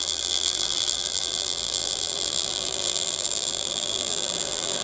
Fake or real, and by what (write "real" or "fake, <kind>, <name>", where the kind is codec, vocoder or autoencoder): fake, vocoder, BigVGAN v2